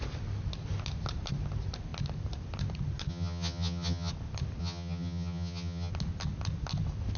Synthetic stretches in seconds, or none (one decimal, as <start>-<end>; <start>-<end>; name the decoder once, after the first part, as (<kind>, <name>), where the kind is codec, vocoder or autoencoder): 3.1-4.1 (vocoder, HiFi-GAN); 4.6-5.9